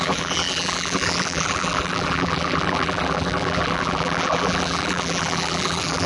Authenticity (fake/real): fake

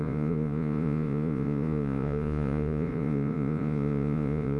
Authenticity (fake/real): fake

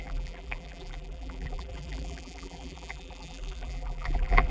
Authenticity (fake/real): fake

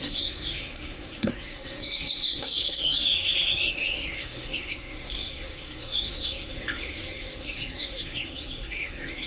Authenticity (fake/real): fake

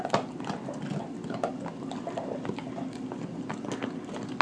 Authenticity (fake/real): real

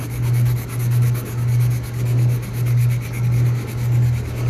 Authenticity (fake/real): fake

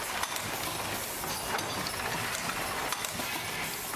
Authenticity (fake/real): real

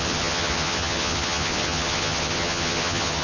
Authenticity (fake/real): fake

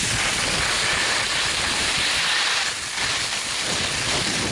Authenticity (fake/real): real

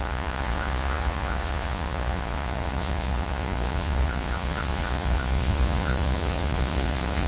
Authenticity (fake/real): fake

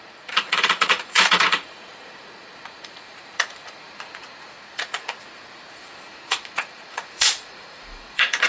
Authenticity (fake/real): fake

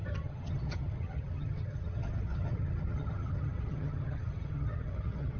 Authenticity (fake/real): fake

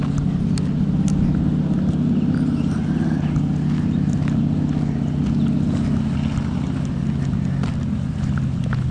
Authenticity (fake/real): real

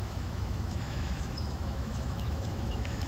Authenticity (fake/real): fake